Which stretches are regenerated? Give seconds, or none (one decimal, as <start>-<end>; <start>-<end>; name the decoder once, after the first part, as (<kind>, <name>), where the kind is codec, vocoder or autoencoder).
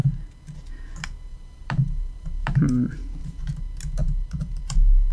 1.3-3.6 (vocoder, BigVGAN v2); 4.0-4.6